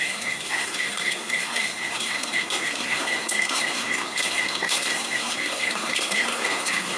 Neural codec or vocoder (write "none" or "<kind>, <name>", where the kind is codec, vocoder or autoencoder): codec, SNAC